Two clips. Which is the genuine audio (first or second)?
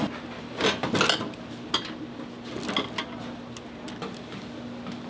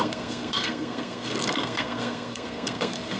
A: first